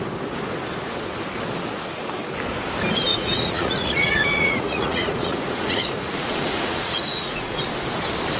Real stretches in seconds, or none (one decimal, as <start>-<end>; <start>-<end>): 0.0-3.1; 7.6-8.4